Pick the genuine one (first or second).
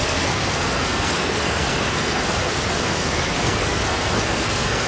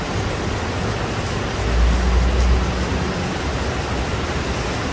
second